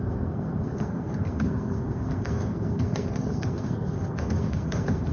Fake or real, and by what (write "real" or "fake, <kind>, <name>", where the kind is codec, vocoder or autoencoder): fake, codec, SNAC